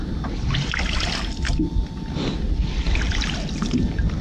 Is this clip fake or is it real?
real